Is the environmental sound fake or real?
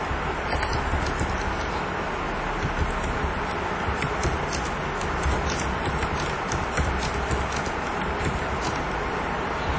real